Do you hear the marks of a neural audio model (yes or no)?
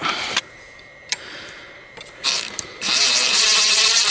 yes